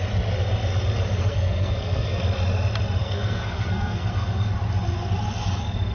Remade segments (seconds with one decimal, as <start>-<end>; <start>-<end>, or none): 1.2-2.2; 3.0-4.5